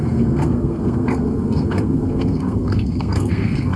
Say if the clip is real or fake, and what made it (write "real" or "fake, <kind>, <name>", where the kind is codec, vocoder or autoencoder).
fake, codec, SNAC